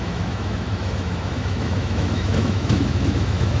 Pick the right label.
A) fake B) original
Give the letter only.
A